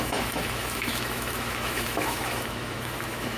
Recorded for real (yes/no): no